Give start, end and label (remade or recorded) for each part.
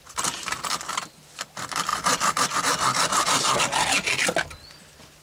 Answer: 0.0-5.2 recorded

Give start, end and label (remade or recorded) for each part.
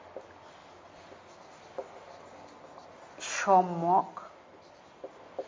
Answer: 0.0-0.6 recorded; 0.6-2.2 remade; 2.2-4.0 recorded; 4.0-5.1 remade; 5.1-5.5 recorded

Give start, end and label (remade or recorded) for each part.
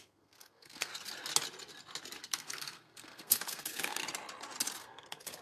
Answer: 0.0-0.9 remade; 0.9-2.2 recorded; 2.2-4.0 remade; 4.0-4.8 recorded; 4.8-5.4 remade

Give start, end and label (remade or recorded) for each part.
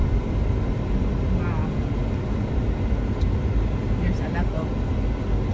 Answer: 0.0-5.5 recorded